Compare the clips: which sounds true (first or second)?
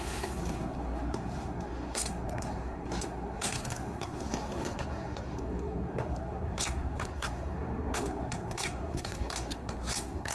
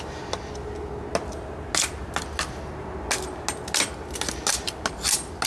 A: second